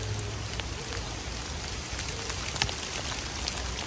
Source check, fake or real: real